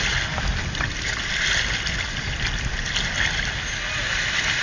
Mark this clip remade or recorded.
recorded